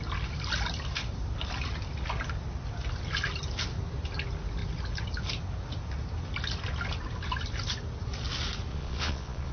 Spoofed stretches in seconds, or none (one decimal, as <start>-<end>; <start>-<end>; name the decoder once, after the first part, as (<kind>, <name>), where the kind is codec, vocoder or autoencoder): 8.7-9.5 (vocoder, Vocos)